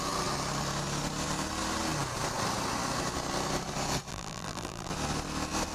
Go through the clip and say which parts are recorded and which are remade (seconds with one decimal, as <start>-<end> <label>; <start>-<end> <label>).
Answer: 0.0-4.1 recorded; 4.1-4.9 remade; 4.9-5.7 recorded